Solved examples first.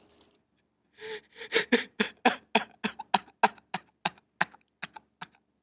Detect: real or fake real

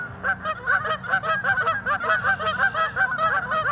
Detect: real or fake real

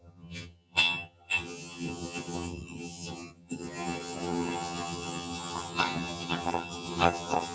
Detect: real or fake fake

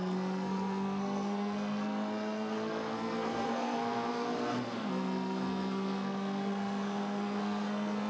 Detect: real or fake fake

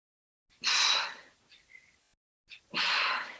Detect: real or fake real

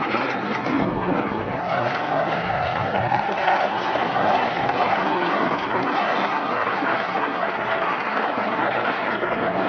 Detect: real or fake fake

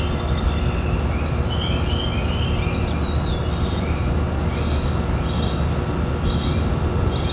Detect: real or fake real